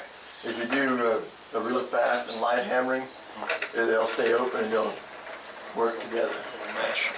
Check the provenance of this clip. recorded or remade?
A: recorded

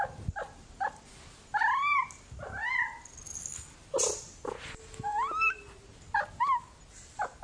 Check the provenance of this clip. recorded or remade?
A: recorded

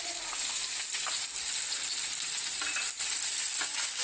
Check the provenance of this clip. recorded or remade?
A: recorded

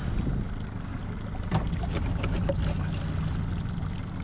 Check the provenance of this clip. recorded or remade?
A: recorded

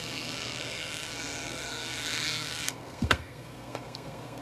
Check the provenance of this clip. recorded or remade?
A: remade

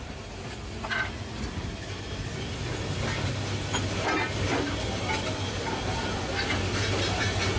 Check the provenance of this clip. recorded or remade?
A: recorded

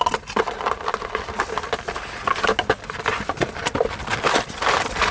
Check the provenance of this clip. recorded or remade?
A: recorded